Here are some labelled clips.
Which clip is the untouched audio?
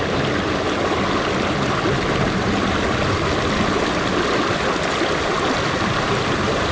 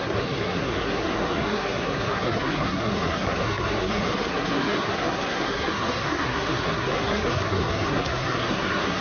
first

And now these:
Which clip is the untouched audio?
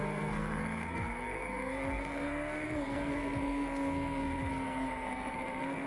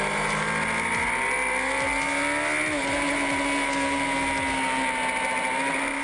second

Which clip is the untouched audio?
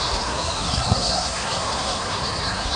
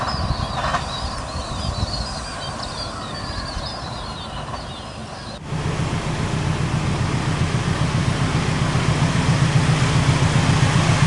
second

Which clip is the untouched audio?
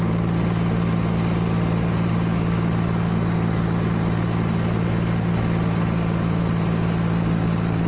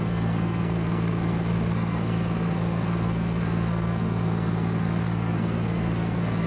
first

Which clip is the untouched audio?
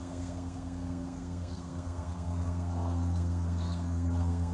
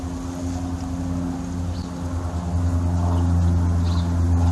second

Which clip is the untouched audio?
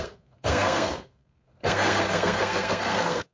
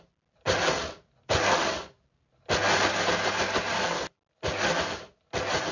second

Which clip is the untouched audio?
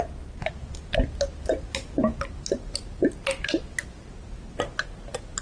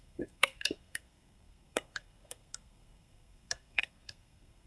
first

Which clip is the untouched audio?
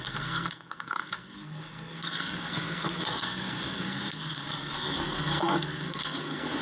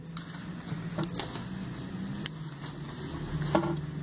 second